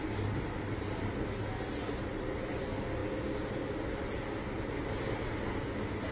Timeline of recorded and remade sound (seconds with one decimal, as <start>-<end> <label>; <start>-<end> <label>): 0.0-6.1 recorded